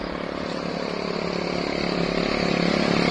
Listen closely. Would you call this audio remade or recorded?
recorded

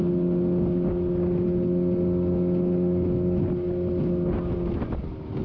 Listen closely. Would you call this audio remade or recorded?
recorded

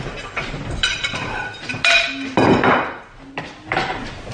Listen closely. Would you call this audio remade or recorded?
recorded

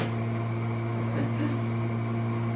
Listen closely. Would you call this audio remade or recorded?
recorded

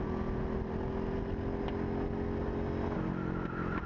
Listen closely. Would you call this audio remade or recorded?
recorded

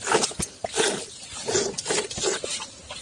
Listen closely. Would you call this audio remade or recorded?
recorded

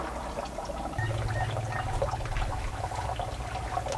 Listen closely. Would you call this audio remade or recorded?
recorded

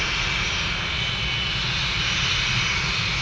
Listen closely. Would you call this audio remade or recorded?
recorded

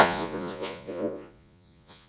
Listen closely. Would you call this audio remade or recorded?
remade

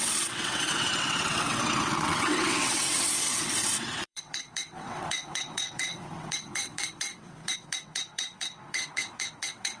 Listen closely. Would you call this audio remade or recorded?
remade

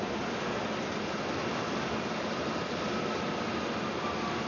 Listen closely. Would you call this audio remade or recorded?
recorded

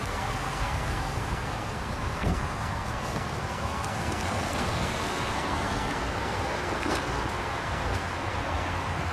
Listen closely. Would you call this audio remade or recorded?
remade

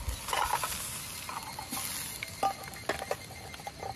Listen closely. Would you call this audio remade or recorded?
recorded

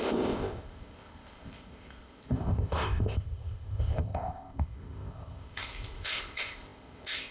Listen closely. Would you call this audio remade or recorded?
remade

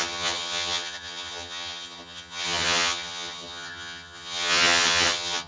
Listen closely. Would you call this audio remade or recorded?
remade